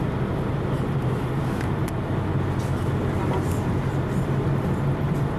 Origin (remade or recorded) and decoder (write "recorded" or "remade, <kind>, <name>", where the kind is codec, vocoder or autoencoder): recorded